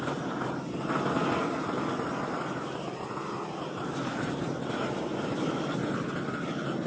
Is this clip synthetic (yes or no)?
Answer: no